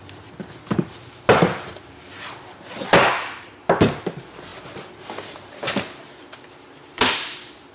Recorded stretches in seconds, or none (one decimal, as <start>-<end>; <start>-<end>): 0.0-7.7